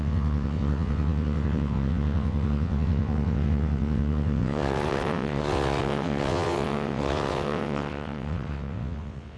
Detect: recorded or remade remade